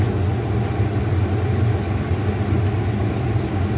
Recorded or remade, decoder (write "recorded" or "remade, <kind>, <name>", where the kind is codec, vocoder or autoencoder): recorded